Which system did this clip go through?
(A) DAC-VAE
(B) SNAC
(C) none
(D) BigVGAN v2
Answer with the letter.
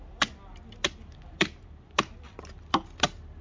C